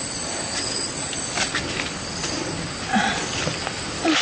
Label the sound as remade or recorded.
recorded